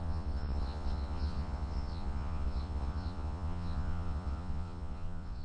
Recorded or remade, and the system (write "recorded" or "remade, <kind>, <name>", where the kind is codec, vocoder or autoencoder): remade, vocoder, Vocos